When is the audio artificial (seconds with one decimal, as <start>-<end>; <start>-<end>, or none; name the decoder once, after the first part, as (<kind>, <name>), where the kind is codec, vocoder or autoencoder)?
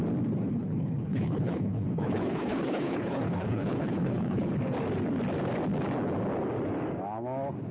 0.5-4.5 (codec, HILCodec)